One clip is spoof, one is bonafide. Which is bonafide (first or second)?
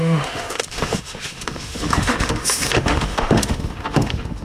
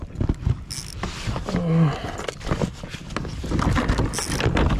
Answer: second